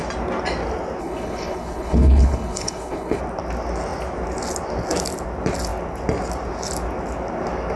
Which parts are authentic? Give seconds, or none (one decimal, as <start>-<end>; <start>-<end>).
0.0-1.0; 3.2-7.8